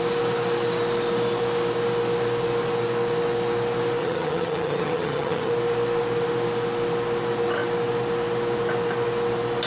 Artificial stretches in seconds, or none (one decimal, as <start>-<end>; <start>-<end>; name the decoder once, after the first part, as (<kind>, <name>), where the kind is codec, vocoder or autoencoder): 4.0-5.5 (vocoder, HiFi-GAN)